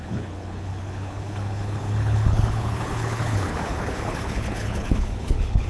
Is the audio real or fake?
fake